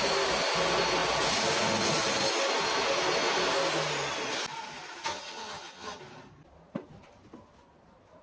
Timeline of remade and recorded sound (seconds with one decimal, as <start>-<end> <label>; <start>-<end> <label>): 0.0-5.1 recorded; 5.1-6.0 remade; 6.0-8.2 recorded